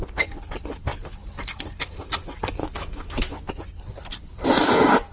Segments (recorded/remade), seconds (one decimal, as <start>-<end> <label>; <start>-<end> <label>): 0.0-2.6 recorded; 2.6-3.5 remade; 3.5-5.1 recorded